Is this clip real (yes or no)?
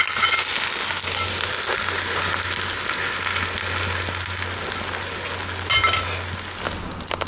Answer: yes